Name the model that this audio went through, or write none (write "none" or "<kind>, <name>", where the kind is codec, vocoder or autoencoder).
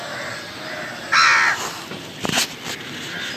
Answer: none